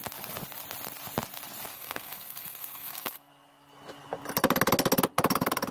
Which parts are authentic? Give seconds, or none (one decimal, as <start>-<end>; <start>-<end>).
0.0-1.7; 3.3-5.7